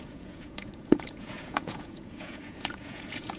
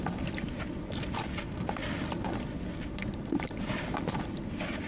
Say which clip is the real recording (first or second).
second